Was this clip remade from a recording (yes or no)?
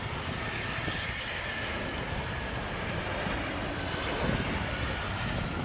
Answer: no